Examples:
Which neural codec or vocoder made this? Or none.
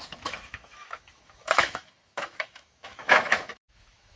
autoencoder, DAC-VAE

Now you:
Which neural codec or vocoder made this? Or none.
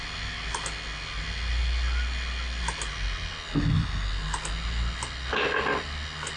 none